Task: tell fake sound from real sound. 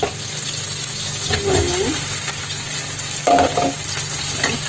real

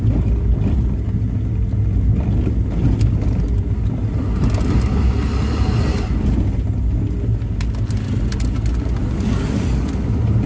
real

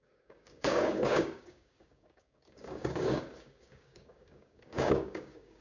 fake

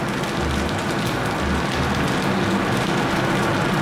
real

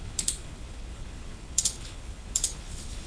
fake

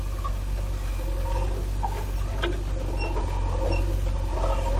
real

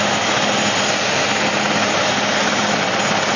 real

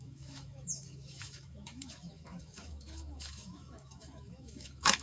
fake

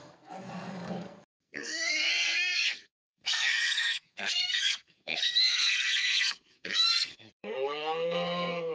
fake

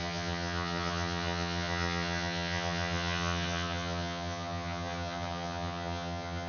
fake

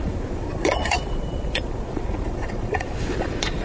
fake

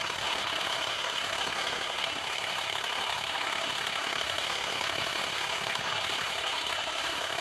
fake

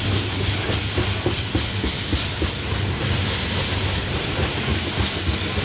real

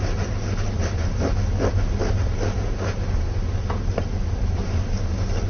real